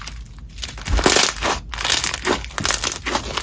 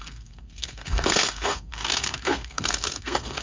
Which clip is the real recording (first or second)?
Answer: first